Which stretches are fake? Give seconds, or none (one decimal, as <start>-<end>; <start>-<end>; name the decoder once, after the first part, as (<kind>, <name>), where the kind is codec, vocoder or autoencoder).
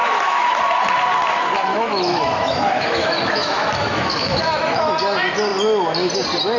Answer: 0.0-0.6 (autoencoder, DAC-VAE); 1.7-4.9